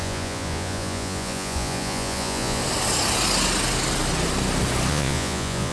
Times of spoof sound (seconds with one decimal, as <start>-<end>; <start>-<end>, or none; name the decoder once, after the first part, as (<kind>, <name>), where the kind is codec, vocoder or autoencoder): 0.0-2.6 (vocoder, Vocos); 4.9-5.7